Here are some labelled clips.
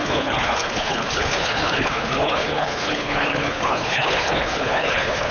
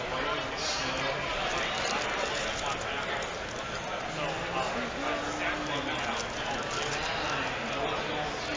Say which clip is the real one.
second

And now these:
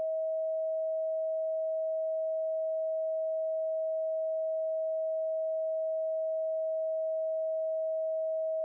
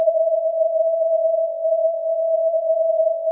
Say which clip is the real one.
first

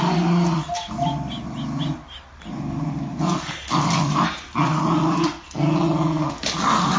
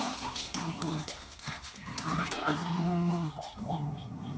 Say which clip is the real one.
first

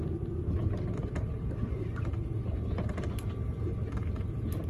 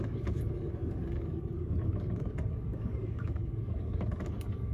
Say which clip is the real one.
first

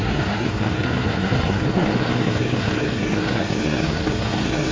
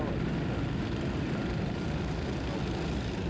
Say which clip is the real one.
second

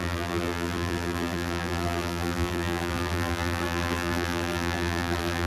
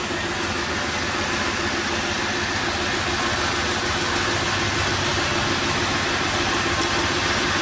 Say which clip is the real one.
second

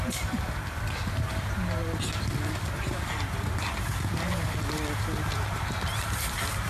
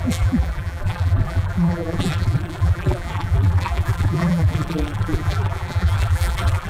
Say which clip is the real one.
first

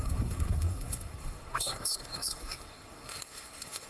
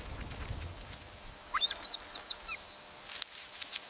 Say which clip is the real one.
second